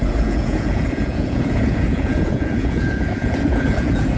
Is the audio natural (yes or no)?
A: no